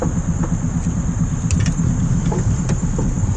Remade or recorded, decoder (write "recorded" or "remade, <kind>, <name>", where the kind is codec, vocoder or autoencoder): recorded